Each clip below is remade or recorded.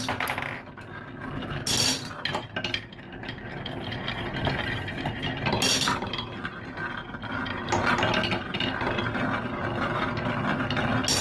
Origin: recorded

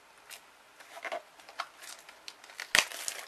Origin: recorded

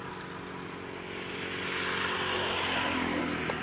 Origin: recorded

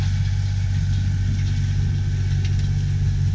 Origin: recorded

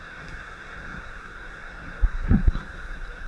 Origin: remade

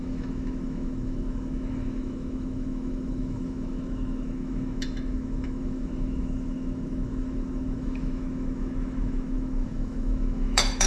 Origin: remade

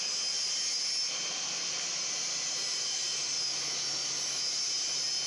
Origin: recorded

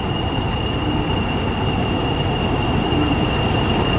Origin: recorded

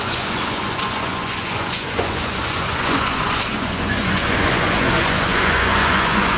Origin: remade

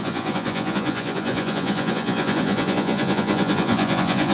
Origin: remade